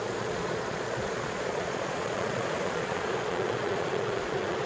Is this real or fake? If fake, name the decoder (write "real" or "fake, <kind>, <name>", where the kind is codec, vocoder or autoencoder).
fake, vocoder, Vocos